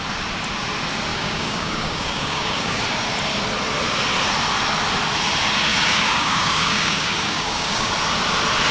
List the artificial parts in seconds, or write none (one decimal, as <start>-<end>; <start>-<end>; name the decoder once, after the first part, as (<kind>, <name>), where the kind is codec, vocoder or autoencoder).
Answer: 1.1-2.8 (codec, DAC); 5.7-7.9